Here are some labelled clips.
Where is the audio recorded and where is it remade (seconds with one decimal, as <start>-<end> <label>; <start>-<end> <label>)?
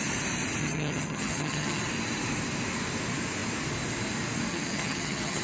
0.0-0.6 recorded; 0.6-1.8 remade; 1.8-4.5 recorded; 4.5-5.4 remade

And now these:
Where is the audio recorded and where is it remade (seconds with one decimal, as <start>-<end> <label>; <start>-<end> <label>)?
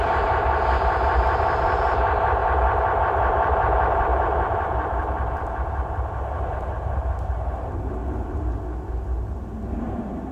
0.0-2.4 remade; 2.4-3.0 recorded; 3.0-8.0 remade; 8.0-9.8 recorded; 9.8-10.3 remade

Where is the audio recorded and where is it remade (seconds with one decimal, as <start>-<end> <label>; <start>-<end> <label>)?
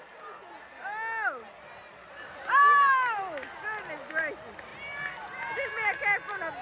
0.0-6.6 recorded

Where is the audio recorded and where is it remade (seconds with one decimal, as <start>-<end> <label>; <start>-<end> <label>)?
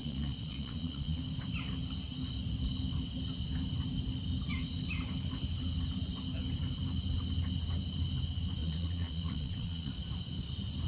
0.0-1.2 remade; 1.2-8.6 recorded; 8.6-9.9 remade; 9.9-10.9 recorded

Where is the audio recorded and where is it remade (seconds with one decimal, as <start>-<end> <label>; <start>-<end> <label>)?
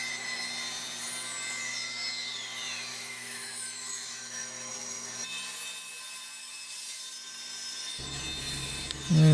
0.0-2.9 recorded; 2.9-4.7 remade; 4.7-9.3 recorded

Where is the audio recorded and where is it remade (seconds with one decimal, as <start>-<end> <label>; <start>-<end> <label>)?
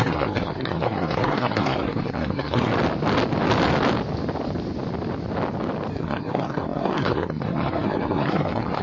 0.0-2.7 remade; 2.7-5.9 recorded; 5.9-8.8 remade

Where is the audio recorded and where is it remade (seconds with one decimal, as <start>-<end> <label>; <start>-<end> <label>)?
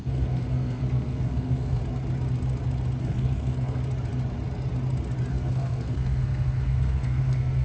0.0-1.8 remade; 1.8-3.0 recorded; 3.0-3.8 remade; 3.8-5.3 recorded; 5.3-7.6 remade